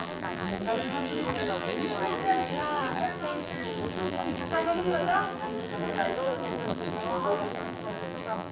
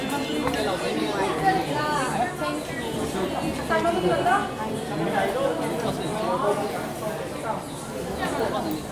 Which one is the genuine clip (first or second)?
second